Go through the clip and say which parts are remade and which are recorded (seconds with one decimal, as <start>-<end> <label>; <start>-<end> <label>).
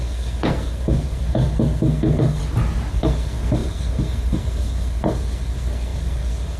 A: 0.0-2.4 remade; 2.4-2.9 recorded; 2.9-6.6 remade